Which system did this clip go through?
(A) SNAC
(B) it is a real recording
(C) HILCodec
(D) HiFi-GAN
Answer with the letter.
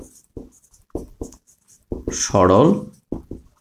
B